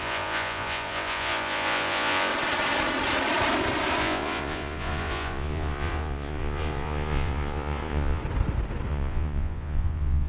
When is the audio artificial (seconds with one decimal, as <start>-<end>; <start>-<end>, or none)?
0.0-2.3; 4.0-8.2; 8.9-10.3